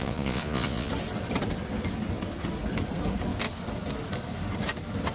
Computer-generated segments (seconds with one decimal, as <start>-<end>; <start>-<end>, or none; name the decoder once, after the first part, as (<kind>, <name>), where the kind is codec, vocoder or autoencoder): 0.0-0.9 (vocoder, Vocos)